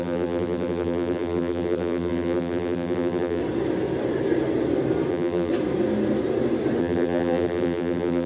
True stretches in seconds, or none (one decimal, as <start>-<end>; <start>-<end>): 3.4-5.1; 5.5-6.8